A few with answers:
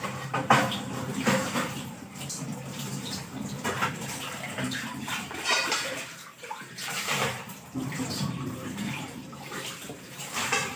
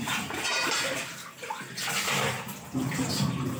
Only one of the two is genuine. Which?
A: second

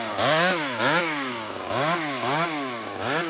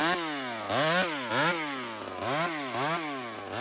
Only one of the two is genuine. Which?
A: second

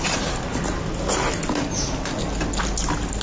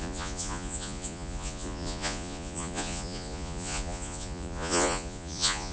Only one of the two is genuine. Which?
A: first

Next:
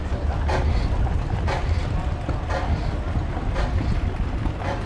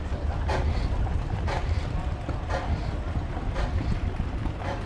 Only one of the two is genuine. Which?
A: first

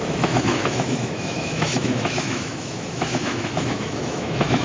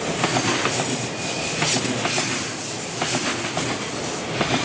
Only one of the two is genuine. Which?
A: second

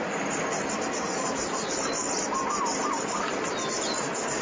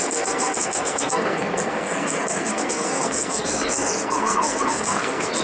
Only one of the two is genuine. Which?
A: first